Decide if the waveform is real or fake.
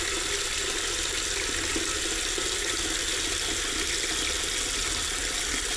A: real